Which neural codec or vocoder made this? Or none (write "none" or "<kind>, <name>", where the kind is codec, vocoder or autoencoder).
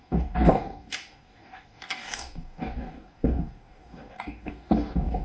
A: codec, DAC